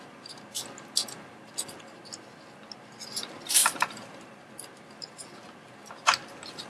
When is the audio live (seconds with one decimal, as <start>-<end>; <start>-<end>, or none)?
0.0-3.6; 4.5-6.7